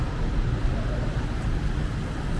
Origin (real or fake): real